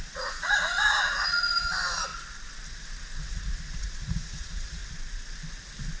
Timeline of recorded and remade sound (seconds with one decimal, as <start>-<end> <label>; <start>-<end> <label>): 0.0-2.1 remade; 2.1-3.2 recorded; 3.2-4.8 remade; 4.8-6.0 recorded